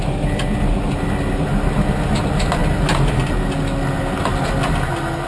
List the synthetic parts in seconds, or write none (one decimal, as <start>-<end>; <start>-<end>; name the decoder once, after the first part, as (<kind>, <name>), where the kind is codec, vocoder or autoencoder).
none